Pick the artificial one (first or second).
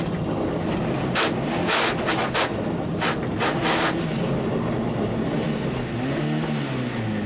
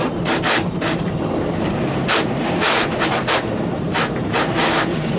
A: second